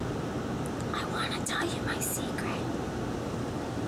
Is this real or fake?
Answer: real